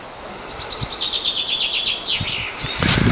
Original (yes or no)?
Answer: yes